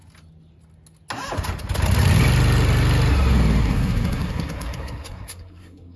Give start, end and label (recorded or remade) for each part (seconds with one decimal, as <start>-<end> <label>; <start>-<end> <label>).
0.0-3.6 recorded; 3.6-6.0 remade